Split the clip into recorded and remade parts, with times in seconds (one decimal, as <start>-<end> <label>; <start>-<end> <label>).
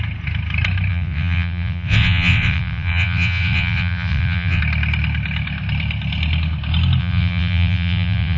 0.0-0.9 recorded; 0.9-4.6 remade; 4.6-7.0 recorded; 7.0-8.4 remade